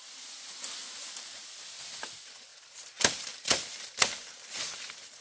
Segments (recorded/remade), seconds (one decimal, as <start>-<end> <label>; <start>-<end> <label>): 0.0-5.2 recorded